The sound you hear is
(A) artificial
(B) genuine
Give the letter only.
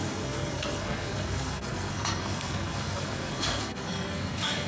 A